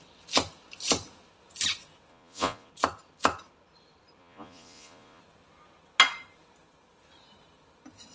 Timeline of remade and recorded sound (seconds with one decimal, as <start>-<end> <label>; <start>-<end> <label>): 0.0-2.1 recorded; 2.1-2.7 remade; 2.7-4.2 recorded; 4.2-5.2 remade; 5.2-8.1 recorded